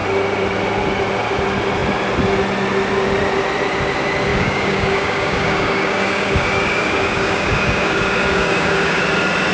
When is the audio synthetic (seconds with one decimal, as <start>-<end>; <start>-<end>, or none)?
4.3-9.0